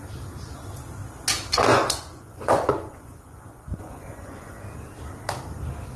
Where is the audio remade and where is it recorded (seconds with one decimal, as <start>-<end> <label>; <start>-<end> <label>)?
0.0-1.7 recorded; 1.7-4.6 remade; 4.6-6.0 recorded